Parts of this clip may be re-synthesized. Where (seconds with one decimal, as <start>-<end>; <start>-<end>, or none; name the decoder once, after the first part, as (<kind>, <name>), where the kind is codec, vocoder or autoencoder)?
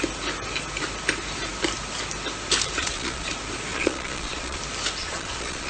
2.8-3.3 (vocoder, Vocos); 3.7-4.6; 5.0-5.7